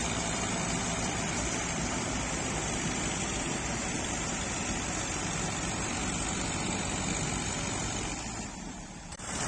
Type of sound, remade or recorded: remade